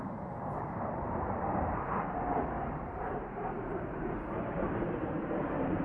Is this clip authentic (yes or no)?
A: no